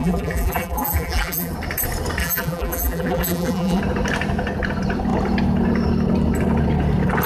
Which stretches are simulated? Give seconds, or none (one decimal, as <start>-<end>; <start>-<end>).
0.0-1.5; 2.2-3.8